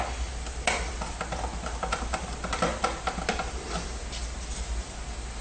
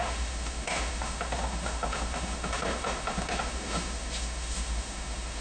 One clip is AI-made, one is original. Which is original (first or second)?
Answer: first